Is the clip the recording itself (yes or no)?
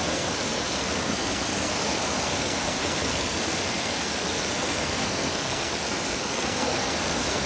no